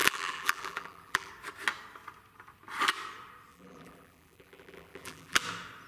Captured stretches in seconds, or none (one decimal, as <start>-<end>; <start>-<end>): 1.3-3.5; 5.4-5.9

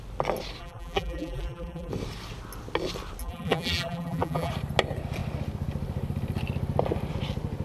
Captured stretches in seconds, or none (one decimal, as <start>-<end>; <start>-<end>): 0.0-0.6; 1.9-3.2; 4.5-7.6

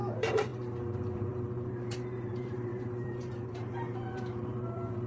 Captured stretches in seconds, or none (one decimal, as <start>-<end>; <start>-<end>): none

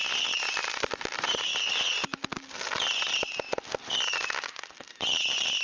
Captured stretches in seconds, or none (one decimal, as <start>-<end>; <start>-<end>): 0.0-0.7; 1.5-4.9

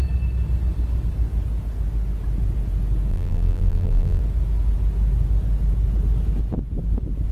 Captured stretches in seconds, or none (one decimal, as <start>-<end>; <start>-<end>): 0.0-3.1; 4.2-7.3

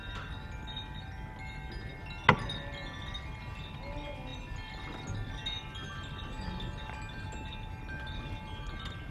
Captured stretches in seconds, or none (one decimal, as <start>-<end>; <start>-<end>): 0.0-9.1

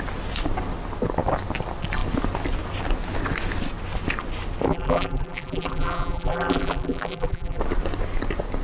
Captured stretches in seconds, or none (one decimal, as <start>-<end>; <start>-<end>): 0.0-4.7; 7.6-8.6

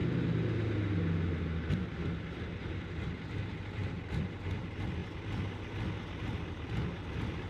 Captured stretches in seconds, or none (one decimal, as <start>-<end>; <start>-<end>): 0.0-7.5